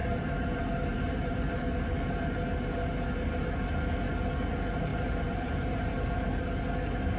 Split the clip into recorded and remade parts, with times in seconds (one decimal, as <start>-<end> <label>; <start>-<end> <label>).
0.0-1.6 remade; 1.6-4.9 recorded; 4.9-6.6 remade; 6.6-7.2 recorded